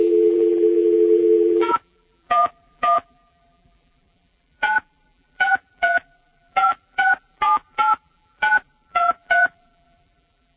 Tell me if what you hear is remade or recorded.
remade